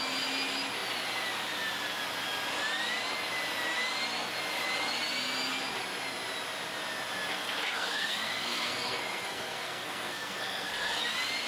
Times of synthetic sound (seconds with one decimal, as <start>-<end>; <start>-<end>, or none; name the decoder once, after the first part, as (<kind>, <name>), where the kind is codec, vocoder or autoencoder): 7.3-11.0 (codec, SNAC)